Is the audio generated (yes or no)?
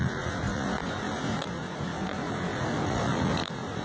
yes